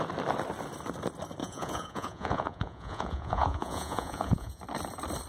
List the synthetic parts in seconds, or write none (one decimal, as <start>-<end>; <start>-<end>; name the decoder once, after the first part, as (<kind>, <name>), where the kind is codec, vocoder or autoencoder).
1.4-4.6 (vocoder, Vocos)